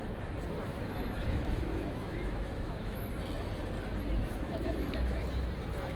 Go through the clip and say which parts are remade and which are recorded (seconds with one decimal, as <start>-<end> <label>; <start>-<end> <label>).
0.0-0.7 recorded; 0.7-3.1 remade; 3.1-4.2 recorded; 4.2-5.2 remade; 5.2-6.0 recorded